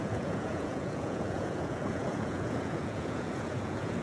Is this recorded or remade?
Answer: remade